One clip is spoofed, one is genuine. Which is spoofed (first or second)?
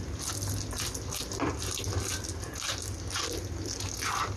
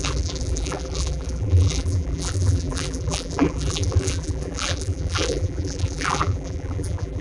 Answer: second